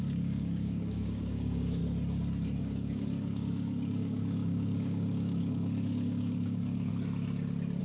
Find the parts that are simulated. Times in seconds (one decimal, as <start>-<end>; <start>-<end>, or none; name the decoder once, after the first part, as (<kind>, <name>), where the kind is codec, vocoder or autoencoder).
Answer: 0.0-1.8 (codec, DAC); 2.6-6.9

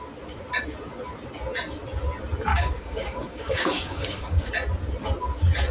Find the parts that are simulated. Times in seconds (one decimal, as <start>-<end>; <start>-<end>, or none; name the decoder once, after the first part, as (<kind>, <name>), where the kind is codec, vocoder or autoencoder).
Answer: 2.5-4.5 (codec, DAC)

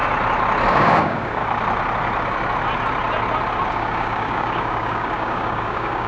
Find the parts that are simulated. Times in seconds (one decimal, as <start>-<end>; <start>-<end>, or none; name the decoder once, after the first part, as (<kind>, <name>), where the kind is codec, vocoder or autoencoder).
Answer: 0.7-1.4 (codec, DAC); 3.7-6.1

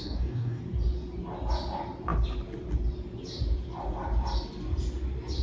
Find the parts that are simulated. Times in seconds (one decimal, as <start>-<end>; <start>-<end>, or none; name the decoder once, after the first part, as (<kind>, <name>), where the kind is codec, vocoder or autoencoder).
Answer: 0.0-0.6 (codec, DAC)